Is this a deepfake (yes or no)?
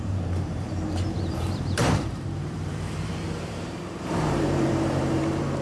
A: yes